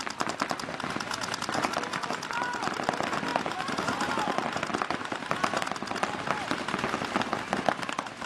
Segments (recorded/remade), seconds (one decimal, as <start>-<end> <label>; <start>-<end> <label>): 0.0-3.3 recorded; 3.3-4.1 remade; 4.1-4.7 recorded; 4.7-5.7 remade; 5.7-8.3 recorded